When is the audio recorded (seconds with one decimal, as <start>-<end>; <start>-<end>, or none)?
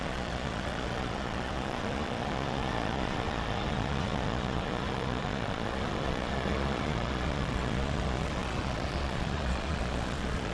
none